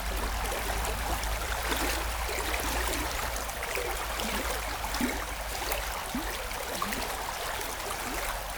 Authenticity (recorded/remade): recorded